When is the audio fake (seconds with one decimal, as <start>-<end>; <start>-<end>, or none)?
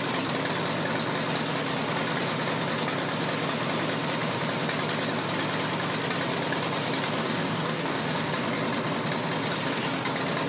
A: 7.2-8.3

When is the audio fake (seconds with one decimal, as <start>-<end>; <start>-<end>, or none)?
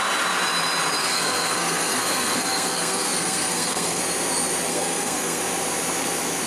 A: 1.0-4.0; 4.7-5.4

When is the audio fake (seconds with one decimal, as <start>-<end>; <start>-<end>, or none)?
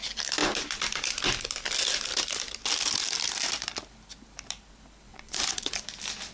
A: 5.1-5.8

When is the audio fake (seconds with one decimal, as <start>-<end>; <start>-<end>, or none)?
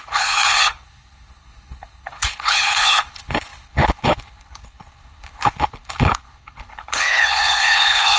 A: 0.0-8.2